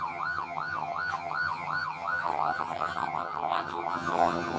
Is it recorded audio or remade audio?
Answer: remade